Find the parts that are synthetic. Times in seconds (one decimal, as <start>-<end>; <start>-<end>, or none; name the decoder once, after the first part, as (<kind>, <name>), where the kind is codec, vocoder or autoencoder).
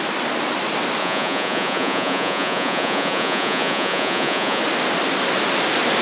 1.0-4.6 (vocoder, Vocos)